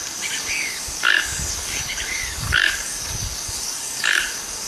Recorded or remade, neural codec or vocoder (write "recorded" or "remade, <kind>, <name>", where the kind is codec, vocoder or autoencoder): remade, codec, DAC